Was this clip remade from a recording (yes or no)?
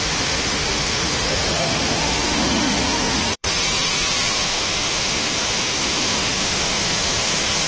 yes